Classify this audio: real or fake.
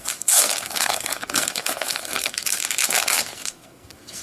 fake